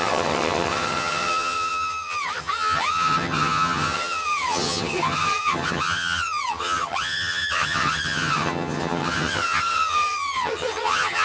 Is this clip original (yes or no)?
no